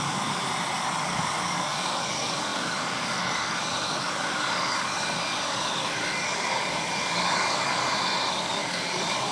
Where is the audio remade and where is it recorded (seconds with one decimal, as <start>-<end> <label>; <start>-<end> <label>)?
0.0-0.4 remade; 0.4-1.0 recorded; 1.0-7.8 remade; 7.8-8.3 recorded; 8.3-9.3 remade